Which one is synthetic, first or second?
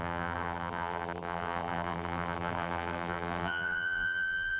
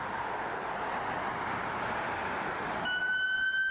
first